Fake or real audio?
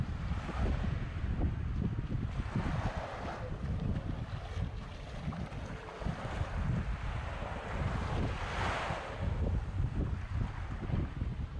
real